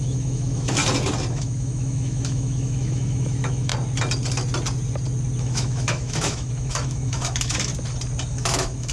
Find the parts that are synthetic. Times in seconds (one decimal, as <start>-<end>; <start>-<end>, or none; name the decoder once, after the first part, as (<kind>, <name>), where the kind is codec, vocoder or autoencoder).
0.0-0.8 (autoencoder, DAC-VAE); 1.3-3.7; 5.4-7.7; 8.3-8.9